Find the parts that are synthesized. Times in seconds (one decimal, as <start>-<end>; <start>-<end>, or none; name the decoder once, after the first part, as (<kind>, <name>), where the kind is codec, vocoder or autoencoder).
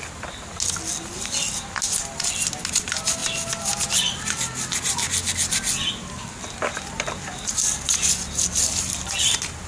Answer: none